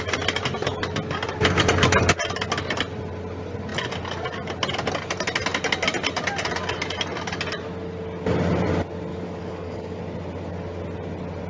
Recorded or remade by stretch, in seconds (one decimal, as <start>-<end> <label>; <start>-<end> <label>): 0.0-9.1 recorded; 9.1-10.0 remade; 10.0-11.5 recorded